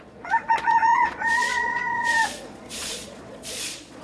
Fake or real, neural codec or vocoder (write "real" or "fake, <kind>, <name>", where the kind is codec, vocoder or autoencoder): fake, vocoder, Vocos